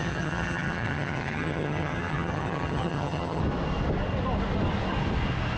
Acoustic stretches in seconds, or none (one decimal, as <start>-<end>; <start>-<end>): 3.4-5.6